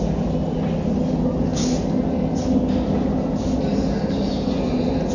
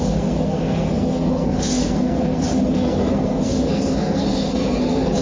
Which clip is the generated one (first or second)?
second